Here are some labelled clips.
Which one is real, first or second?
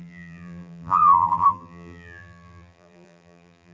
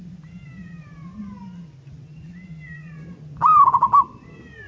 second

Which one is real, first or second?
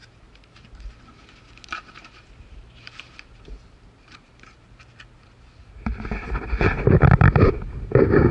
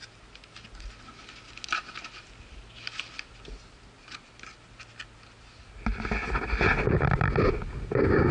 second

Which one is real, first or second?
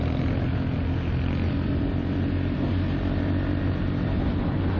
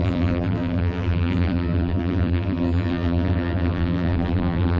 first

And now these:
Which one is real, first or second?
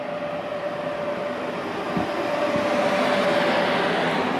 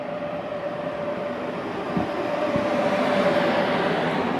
first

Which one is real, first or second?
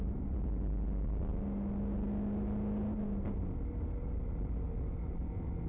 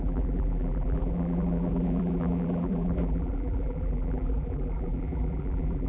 first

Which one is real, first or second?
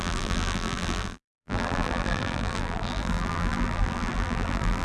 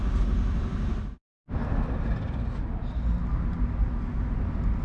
second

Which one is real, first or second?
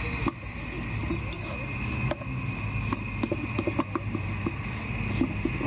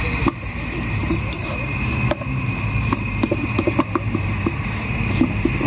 first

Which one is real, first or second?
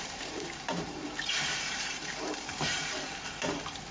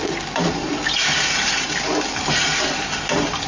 second